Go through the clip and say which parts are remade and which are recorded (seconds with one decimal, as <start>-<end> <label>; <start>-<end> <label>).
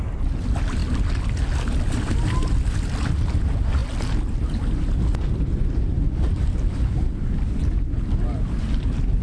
0.0-9.2 recorded